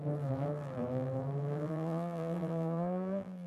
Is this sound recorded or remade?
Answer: remade